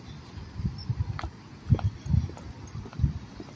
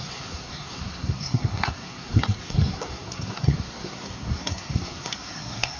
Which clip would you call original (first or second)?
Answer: first